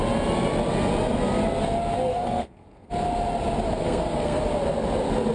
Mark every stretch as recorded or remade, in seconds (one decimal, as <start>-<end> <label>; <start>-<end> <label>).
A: 0.0-2.1 recorded; 2.1-2.9 remade; 2.9-3.8 recorded; 3.8-4.4 remade; 4.4-5.3 recorded